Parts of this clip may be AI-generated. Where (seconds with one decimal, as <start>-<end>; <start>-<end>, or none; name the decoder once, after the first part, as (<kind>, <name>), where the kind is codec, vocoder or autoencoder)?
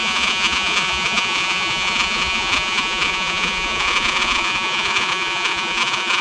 0.0-6.2 (vocoder, Vocos)